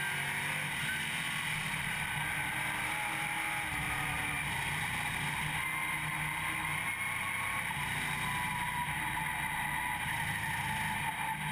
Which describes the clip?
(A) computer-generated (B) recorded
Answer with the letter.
B